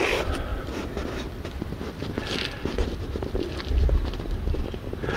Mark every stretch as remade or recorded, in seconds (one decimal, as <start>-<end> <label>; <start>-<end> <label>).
0.0-5.2 recorded